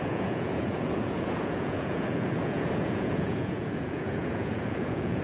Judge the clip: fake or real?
fake